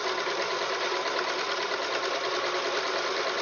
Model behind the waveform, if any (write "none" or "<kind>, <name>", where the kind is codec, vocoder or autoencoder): none